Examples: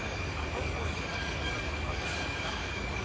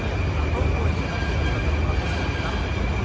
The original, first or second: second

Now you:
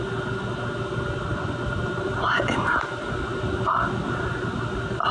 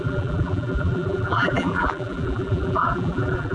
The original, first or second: first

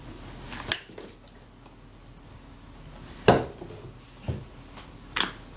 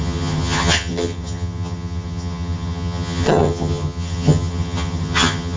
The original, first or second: first